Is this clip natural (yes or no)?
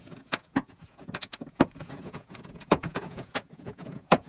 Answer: no